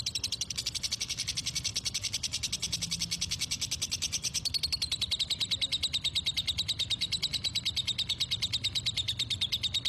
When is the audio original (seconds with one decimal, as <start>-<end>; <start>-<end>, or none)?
0.0-9.9